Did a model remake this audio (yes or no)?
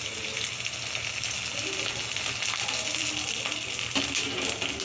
no